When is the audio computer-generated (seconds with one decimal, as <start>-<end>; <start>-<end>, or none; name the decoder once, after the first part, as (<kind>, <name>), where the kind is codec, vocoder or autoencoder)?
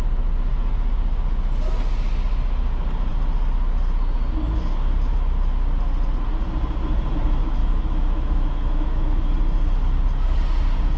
7.6-9.3 (autoencoder, DAC-VAE)